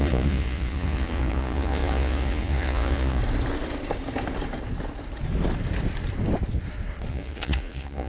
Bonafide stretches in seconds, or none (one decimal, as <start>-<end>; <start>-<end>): 3.2-7.1